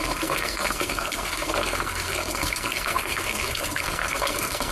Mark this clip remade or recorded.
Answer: remade